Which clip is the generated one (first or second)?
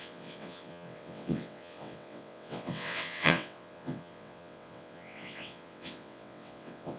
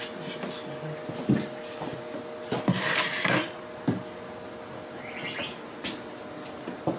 first